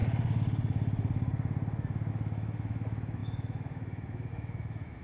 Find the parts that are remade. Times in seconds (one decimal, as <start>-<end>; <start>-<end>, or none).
2.1-5.0